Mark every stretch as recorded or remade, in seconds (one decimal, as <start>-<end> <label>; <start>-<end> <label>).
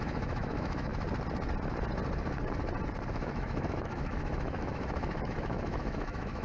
0.0-0.9 remade; 0.9-3.1 recorded; 3.1-6.4 remade